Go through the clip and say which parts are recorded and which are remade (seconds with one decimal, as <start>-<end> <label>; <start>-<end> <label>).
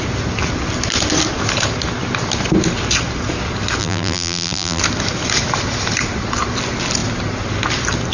0.0-3.8 recorded; 3.8-4.8 remade; 4.8-8.1 recorded